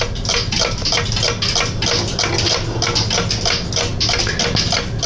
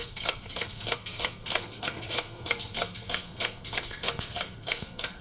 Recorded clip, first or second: first